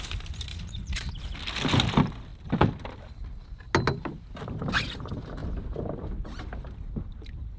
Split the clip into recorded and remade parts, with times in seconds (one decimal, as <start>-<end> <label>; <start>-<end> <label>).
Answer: 0.0-0.5 recorded; 0.5-1.1 remade; 1.1-7.6 recorded